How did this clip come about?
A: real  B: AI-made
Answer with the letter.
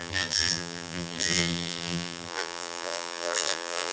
B